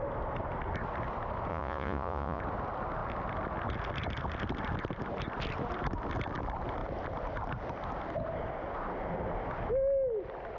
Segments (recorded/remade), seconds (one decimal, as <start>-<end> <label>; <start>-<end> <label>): 0.0-1.5 recorded; 1.5-2.4 remade; 2.4-10.6 recorded

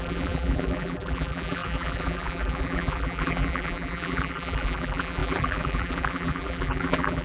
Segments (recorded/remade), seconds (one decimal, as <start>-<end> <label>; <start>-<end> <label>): 0.0-7.2 remade

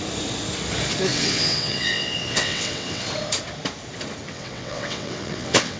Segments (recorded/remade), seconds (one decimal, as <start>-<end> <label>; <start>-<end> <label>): 0.0-1.1 recorded; 1.1-3.0 remade; 3.0-4.3 recorded; 4.3-5.8 remade

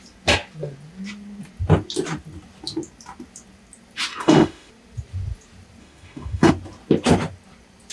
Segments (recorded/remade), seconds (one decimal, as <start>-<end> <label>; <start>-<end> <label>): 0.0-4.1 recorded; 4.1-4.7 remade; 4.7-5.8 recorded; 5.8-6.5 remade; 6.5-7.9 recorded